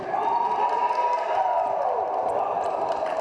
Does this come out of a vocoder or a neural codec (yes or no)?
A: no